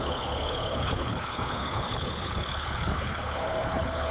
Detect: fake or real fake